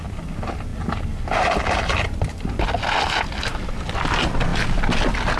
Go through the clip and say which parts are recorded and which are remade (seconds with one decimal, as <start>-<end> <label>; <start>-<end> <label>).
0.0-5.4 recorded

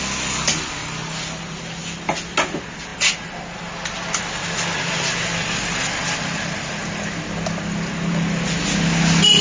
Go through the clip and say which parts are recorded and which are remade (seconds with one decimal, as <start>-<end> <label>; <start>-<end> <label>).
0.0-9.4 recorded

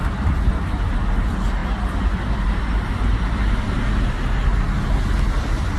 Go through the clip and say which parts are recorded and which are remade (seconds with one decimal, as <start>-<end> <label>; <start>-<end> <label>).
0.0-5.8 recorded

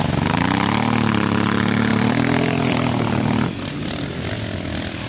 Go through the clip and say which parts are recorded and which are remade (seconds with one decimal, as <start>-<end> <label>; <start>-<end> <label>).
0.0-1.9 recorded; 1.9-3.8 remade; 3.8-5.1 recorded

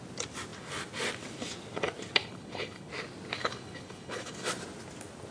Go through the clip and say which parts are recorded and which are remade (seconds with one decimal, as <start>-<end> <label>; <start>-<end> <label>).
0.0-2.2 recorded; 2.2-2.9 remade; 2.9-3.4 recorded; 3.4-4.5 remade; 4.5-5.3 recorded

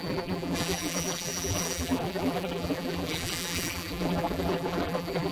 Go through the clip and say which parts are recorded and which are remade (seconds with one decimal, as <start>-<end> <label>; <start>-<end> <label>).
0.0-5.3 remade